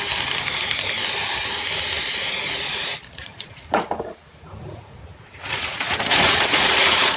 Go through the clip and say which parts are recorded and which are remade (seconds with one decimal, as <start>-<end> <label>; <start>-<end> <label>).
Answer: 0.0-2.3 recorded; 2.3-3.8 remade; 3.8-4.3 recorded; 4.3-7.2 remade